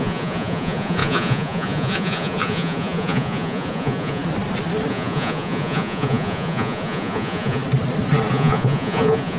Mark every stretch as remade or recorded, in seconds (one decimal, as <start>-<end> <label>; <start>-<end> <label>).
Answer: 0.0-4.2 remade; 4.2-4.9 recorded; 4.9-7.6 remade; 7.6-8.3 recorded; 8.3-9.4 remade